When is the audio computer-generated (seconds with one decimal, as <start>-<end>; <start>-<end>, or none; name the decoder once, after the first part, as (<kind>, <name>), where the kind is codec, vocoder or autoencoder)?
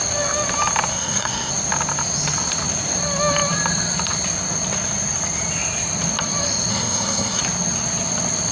0.9-1.5 (codec, SNAC); 6.7-7.4